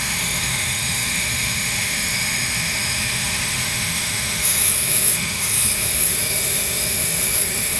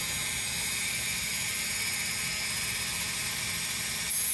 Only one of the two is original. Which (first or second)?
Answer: second